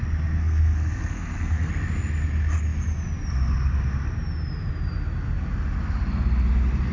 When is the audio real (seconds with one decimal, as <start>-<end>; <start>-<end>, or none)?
0.0-0.4; 1.7-6.9

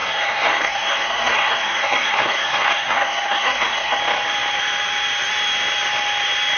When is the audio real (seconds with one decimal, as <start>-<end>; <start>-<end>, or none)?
4.0-6.6

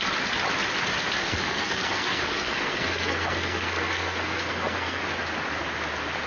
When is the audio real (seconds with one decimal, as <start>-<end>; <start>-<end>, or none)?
0.0-1.2; 5.0-6.3

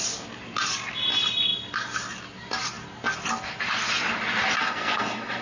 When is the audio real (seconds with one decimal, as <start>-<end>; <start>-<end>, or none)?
0.0-4.6

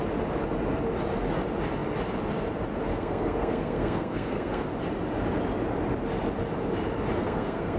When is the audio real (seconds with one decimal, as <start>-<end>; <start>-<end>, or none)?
0.0-2.9; 4.6-7.2

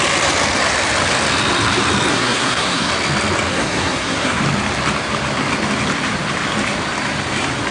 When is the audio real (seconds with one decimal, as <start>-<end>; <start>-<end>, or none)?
0.0-2.1; 2.9-3.5; 4.4-7.7

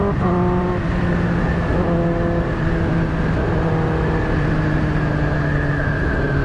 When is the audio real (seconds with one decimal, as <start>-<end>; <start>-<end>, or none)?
0.0-6.4

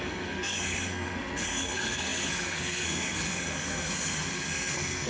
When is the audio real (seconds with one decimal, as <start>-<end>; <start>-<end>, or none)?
none